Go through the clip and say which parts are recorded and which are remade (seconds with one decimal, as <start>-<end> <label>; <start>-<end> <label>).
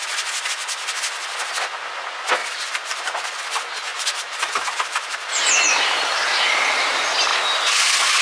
0.0-2.4 recorded; 2.4-3.4 remade; 3.4-3.9 recorded; 3.9-5.3 remade; 5.3-8.2 recorded